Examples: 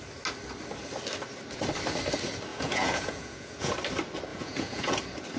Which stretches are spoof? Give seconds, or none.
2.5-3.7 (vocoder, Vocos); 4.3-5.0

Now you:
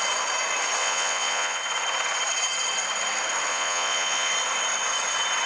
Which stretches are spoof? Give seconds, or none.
0.8-1.6 (vocoder, Vocos); 3.5-4.3

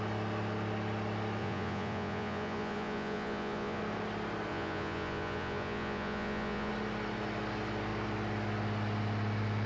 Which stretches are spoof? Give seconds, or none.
1.4-3.8 (vocoder, Vocos); 4.5-6.7